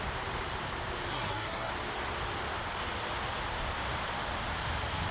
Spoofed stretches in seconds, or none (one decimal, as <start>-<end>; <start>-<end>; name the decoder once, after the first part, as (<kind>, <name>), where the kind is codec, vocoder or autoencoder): 1.1-1.7 (codec, SNAC)